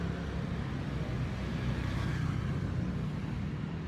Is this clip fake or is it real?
real